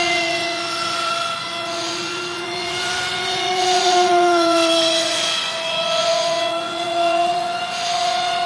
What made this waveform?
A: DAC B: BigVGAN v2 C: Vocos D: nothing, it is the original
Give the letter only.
C